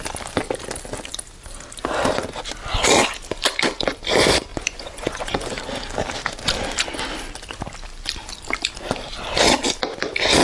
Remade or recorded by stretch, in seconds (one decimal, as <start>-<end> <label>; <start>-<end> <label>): 0.0-4.5 recorded; 4.5-5.6 remade; 5.6-10.4 recorded